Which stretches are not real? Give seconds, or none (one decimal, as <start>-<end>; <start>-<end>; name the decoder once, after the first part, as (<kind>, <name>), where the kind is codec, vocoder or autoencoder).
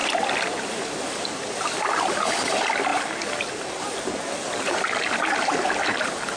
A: 0.6-6.4 (vocoder, BigVGAN v2)